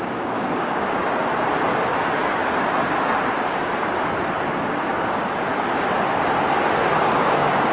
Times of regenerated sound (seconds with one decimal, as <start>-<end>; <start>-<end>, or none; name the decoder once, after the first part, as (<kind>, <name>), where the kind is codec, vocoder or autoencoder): 0.0-1.0 (codec, DAC); 4.3-5.5; 7.1-7.7